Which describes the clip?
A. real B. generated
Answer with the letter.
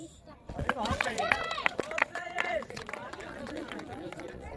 B